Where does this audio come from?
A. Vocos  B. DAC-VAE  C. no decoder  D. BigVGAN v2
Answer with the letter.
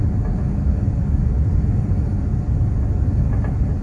C